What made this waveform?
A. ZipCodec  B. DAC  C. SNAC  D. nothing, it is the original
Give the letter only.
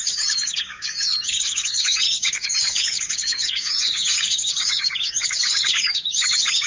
B